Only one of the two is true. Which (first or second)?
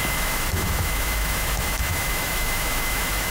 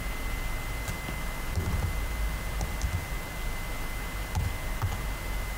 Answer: second